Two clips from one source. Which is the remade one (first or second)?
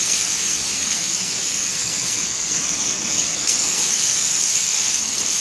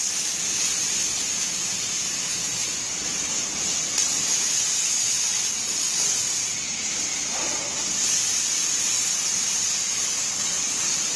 first